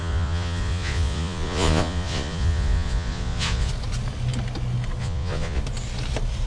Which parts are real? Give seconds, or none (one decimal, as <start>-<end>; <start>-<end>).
3.7-5.0; 5.6-6.5